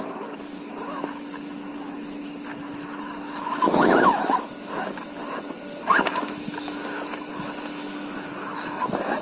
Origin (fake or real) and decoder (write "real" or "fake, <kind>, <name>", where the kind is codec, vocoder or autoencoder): fake, autoencoder, DAC-VAE